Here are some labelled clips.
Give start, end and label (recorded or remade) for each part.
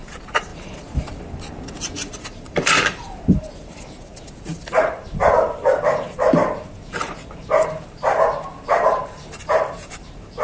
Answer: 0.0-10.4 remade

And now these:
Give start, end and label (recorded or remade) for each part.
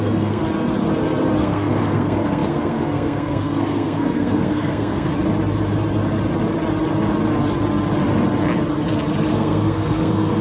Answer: 0.0-0.4 remade; 0.4-1.4 recorded; 1.4-5.1 remade; 5.1-9.3 recorded; 9.3-10.4 remade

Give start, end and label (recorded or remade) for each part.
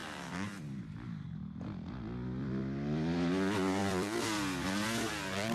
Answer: 0.0-3.3 remade; 3.3-3.8 recorded; 3.8-5.1 remade; 5.1-5.5 recorded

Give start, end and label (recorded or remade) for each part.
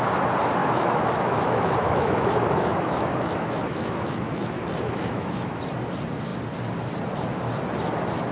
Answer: 0.0-0.6 recorded; 0.6-5.6 remade; 5.6-8.3 recorded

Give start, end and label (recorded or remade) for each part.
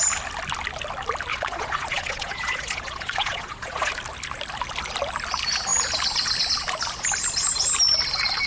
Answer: 0.0-1.3 recorded; 1.3-3.9 remade; 3.9-8.5 recorded